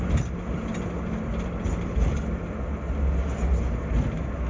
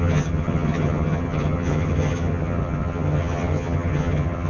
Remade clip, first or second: second